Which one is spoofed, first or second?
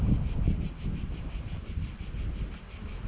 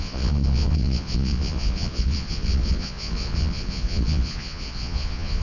second